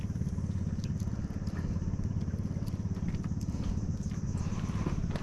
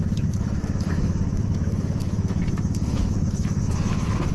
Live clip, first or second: first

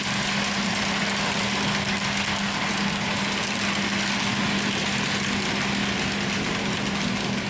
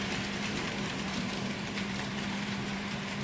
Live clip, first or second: first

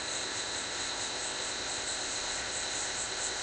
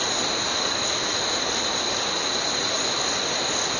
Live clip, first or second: second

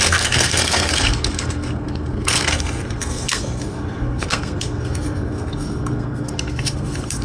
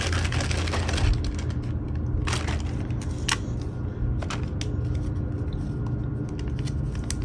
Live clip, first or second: second